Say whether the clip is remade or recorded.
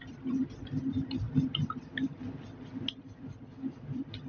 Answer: recorded